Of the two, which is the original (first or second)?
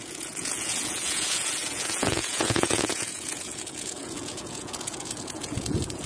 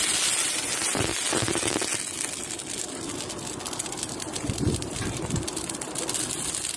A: second